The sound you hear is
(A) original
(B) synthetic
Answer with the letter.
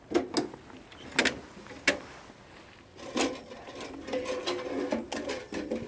A